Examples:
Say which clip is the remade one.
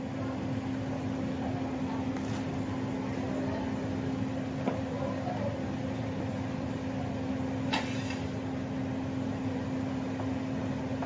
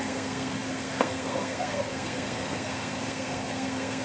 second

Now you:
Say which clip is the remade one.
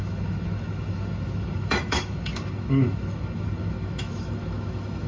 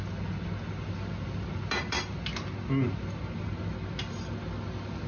first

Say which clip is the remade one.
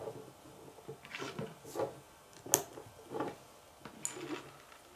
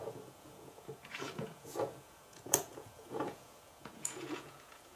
second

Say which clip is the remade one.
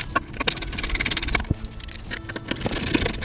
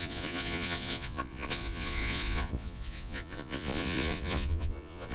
second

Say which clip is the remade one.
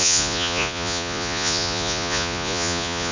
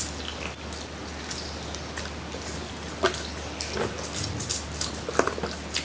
first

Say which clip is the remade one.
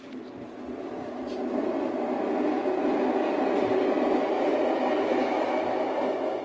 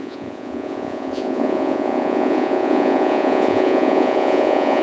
second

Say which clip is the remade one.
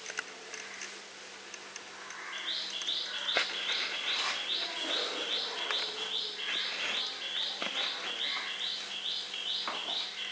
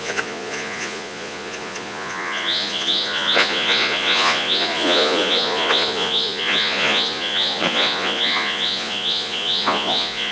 second